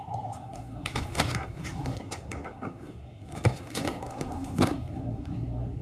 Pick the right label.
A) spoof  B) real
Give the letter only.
A